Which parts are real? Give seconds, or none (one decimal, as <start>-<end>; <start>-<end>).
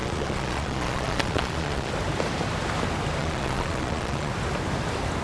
1.9-3.2; 4.3-5.2